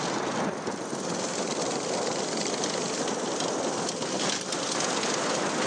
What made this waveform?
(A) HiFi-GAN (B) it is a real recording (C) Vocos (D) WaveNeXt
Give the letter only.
B